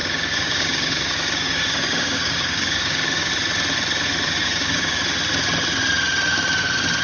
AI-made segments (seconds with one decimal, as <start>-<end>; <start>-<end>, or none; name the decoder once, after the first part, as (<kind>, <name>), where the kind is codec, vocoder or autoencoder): 0.0-3.3 (codec, DAC); 4.4-5.0